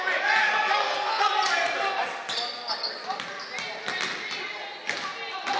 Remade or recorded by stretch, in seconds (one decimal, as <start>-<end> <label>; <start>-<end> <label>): 0.0-0.4 recorded; 0.4-1.3 remade; 1.3-5.6 recorded